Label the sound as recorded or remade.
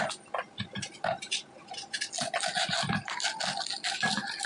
recorded